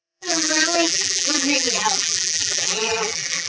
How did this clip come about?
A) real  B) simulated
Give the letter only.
B